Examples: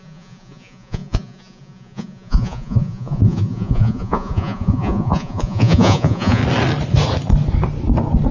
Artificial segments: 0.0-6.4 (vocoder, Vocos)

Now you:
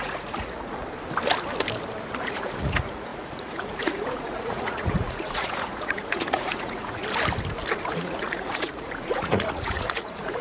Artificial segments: 0.0-0.8 (vocoder, Vocos); 2.2-7.0; 7.9-10.4

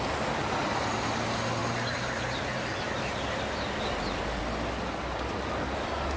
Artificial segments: none

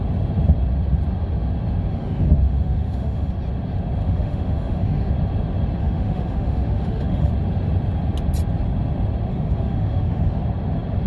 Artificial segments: 1.9-3.3 (autoencoder, DAC-VAE); 4.0-5.1; 5.8-7.3; 9.3-10.4

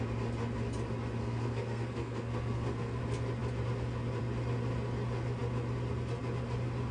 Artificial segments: 1.2-3.0 (codec, SNAC)